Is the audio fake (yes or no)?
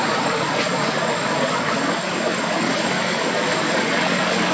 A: yes